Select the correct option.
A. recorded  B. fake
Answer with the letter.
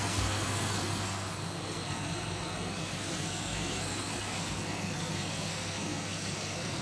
B